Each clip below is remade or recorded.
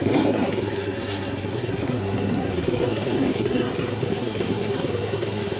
remade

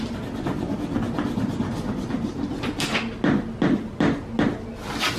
recorded